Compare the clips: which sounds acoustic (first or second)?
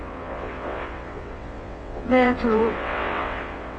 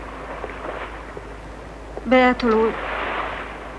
second